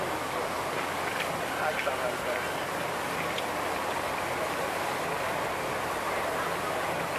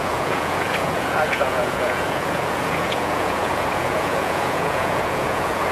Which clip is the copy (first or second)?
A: second